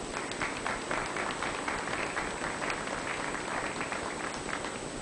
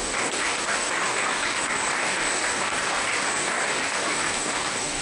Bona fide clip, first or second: first